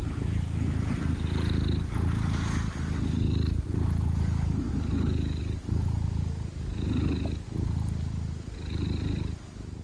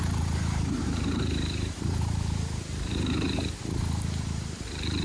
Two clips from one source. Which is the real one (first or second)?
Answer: first